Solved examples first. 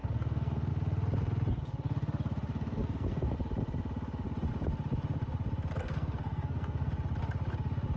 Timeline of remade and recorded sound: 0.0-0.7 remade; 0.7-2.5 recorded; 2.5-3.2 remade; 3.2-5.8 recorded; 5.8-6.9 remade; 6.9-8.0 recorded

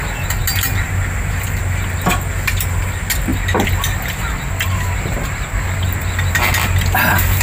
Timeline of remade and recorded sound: 0.0-7.4 recorded